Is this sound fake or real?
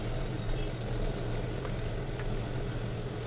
real